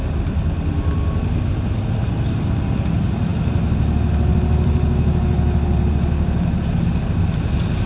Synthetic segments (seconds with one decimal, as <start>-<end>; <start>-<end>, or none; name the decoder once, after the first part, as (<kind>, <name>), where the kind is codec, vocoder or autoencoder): none